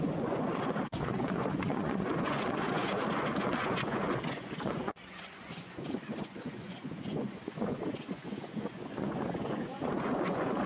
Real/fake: fake